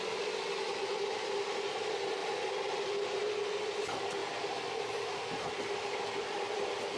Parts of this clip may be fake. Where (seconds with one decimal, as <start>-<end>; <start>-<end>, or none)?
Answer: none